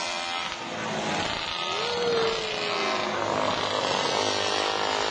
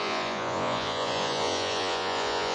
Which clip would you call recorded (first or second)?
first